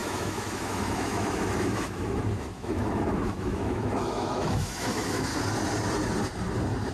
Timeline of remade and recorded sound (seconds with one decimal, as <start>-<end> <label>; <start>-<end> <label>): 0.0-5.3 remade; 5.3-6.9 recorded